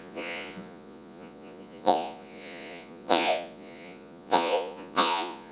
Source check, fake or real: fake